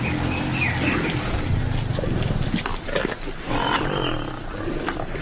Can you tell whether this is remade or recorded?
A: recorded